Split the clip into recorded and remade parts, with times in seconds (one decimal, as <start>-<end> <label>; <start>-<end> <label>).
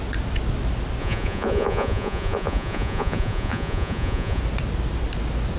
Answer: 0.0-1.0 recorded; 1.0-4.4 remade; 4.4-5.6 recorded